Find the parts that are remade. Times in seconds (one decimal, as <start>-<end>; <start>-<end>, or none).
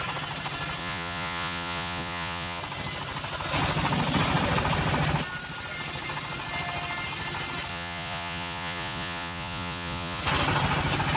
0.8-2.6; 7.7-10.2